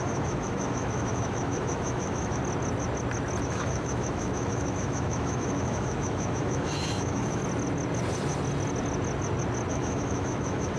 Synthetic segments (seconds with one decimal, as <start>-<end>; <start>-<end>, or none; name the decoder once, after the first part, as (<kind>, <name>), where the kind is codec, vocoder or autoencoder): 0.0-2.4 (autoencoder, DAC-VAE); 3.4-7.4; 9.7-10.8